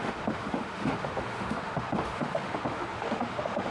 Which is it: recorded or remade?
remade